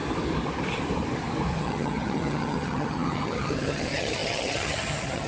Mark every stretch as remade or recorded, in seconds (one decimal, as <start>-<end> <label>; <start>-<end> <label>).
0.0-1.6 recorded; 1.6-5.3 remade